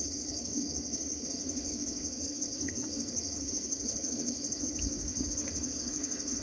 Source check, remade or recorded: remade